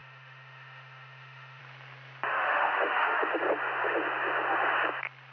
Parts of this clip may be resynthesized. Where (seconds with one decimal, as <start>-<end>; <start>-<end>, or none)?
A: 0.0-1.6; 2.3-3.4